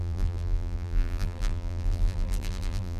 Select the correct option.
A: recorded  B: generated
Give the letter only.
B